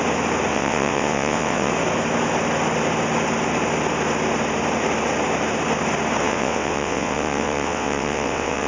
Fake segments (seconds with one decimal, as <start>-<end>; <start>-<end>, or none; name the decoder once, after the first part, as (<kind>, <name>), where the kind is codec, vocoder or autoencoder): 0.5-1.7 (vocoder, WaveNeXt); 6.2-8.7